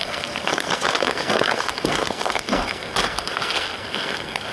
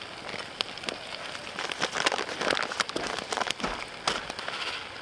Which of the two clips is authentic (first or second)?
second